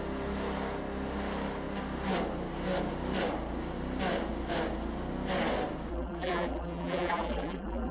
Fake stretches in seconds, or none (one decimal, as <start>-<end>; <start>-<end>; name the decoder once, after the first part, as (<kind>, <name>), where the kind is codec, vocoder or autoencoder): 5.9-7.9 (vocoder, BigVGAN v2)